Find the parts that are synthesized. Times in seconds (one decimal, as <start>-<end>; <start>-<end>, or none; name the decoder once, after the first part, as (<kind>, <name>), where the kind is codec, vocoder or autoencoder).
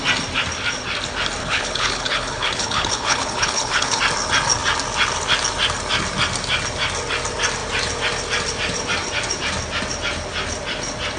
1.4-4.0 (codec, HILCodec)